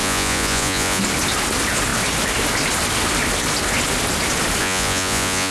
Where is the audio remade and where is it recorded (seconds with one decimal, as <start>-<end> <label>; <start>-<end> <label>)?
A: 0.0-1.0 remade; 1.0-4.6 recorded; 4.6-5.5 remade